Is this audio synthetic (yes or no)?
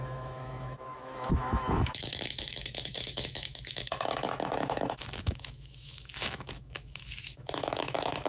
yes